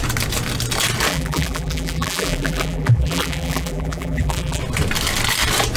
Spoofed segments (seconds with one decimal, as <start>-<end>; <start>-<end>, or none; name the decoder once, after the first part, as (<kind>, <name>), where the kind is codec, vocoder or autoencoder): 1.1-4.6 (vocoder, BigVGAN v2)